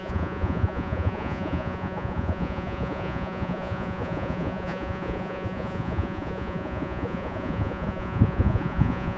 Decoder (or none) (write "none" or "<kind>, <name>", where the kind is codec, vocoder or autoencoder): vocoder, Vocos